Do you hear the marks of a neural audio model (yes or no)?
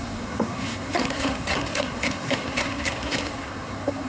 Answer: yes